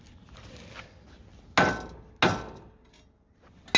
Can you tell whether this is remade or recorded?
recorded